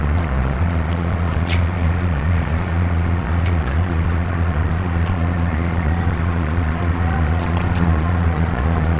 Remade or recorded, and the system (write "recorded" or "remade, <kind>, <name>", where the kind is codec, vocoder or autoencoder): remade, vocoder, Vocos